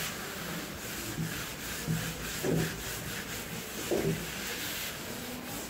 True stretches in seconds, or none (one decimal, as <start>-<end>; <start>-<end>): 0.0-5.7